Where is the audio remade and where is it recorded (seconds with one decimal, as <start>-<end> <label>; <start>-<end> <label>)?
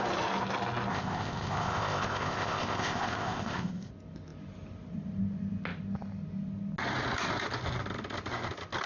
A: 0.0-0.9 recorded; 0.9-3.9 remade; 3.9-8.9 recorded